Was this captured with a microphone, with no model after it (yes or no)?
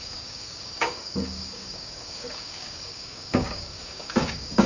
no